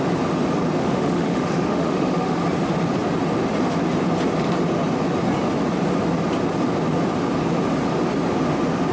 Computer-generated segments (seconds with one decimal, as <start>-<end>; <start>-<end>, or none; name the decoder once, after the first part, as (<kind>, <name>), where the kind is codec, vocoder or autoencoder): 0.8-2.4 (autoencoder, DAC-VAE)